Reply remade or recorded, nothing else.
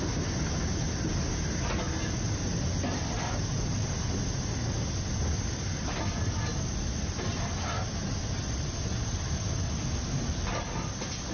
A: recorded